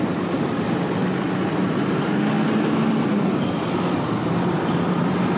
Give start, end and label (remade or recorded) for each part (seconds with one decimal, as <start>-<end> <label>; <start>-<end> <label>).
0.0-5.4 recorded